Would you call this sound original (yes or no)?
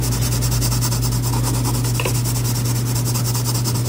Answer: yes